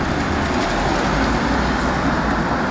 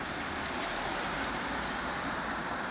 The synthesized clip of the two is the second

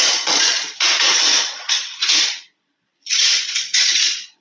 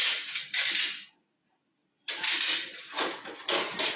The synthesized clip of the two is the first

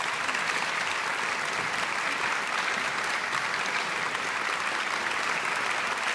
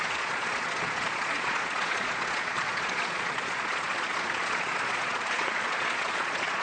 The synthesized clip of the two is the second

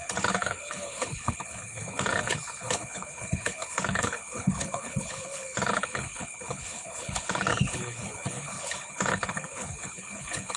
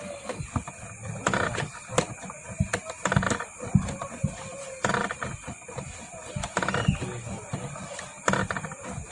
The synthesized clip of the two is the first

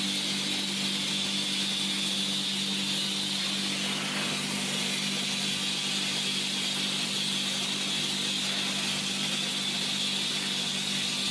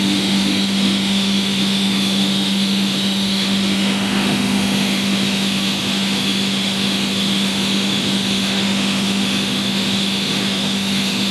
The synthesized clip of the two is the second